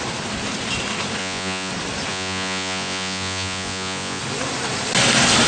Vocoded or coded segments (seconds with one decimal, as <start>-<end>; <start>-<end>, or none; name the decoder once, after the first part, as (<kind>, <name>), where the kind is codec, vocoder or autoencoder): 1.2-1.7 (vocoder, Vocos); 2.1-4.2